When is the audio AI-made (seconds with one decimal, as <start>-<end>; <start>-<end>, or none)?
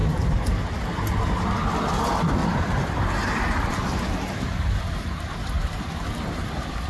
0.0-0.8; 2.4-6.5